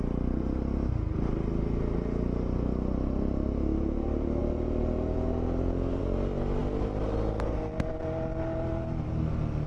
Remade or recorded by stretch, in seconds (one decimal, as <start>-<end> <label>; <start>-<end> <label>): 0.0-9.7 recorded